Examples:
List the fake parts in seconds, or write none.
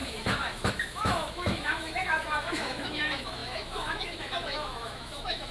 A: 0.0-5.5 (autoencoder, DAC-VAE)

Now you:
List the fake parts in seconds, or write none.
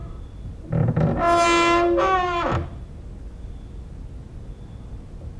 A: none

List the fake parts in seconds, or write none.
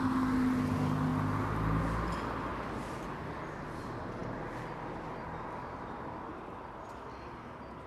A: none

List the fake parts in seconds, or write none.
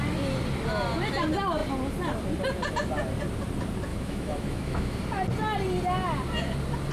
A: 3.9-5.0 (autoencoder, DAC-VAE)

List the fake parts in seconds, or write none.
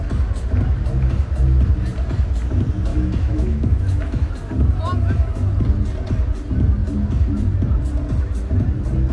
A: 2.9-4.3 (autoencoder, DAC-VAE)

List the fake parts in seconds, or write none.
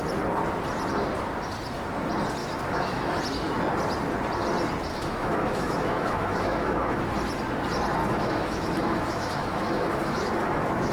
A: 2.4-3.2 (autoencoder, DAC-VAE); 4.9-7.1; 8.0-10.9